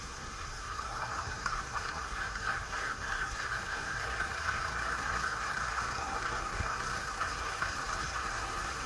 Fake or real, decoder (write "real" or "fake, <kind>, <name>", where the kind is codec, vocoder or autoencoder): fake, codec, SNAC